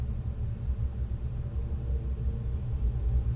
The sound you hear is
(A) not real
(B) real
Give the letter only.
A